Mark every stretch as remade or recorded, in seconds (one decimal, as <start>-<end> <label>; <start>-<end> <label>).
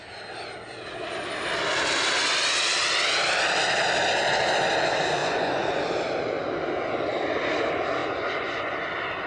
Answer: 0.0-5.2 recorded; 5.2-5.8 remade; 5.8-8.0 recorded; 8.0-8.7 remade; 8.7-9.3 recorded